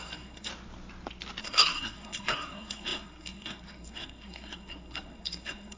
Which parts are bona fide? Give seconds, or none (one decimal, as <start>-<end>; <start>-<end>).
0.5-1.4